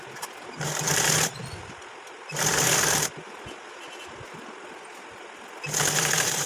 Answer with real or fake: real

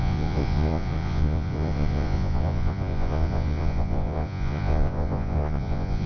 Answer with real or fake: fake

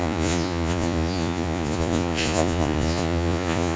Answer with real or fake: fake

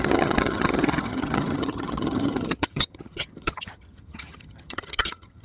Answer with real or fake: fake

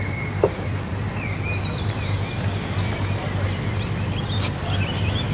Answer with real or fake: fake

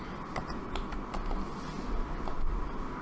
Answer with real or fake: real